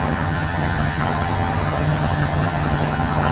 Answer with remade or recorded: remade